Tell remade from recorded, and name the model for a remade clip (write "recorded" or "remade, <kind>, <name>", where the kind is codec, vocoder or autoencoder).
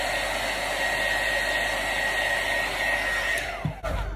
recorded